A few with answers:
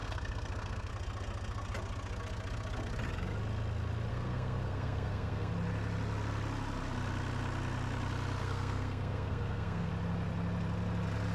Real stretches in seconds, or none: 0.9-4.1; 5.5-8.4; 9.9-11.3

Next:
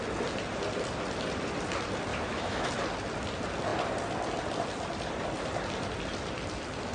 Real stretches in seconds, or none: 0.0-2.1; 2.7-6.9

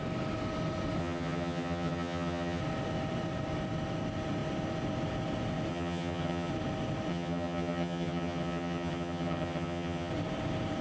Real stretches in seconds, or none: 0.0-1.0; 2.6-5.7; 6.5-7.1; 10.1-10.8